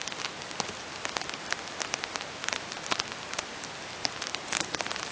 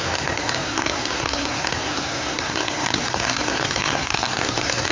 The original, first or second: first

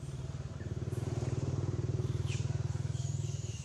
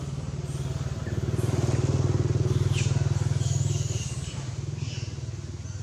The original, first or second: second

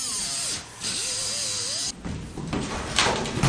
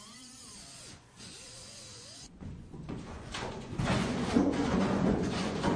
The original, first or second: first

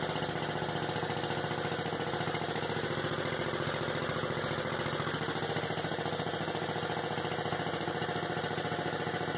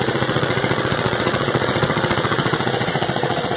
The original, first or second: first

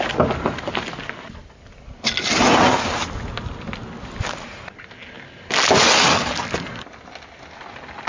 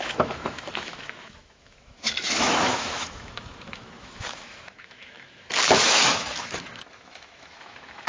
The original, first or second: first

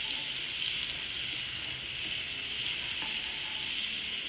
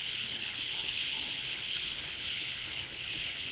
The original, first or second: first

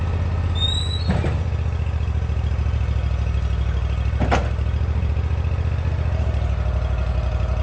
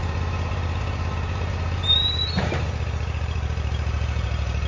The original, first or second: first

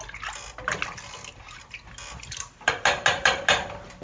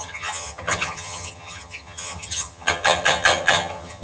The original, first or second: first